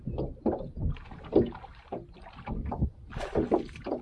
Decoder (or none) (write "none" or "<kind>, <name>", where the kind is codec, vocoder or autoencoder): none